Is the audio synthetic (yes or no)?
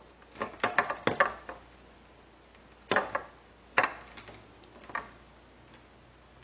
no